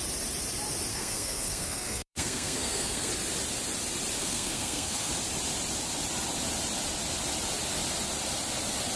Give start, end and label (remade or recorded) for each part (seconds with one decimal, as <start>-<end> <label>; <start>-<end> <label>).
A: 0.0-0.9 recorded; 0.9-3.1 remade; 3.1-4.2 recorded; 4.2-5.1 remade; 5.1-9.0 recorded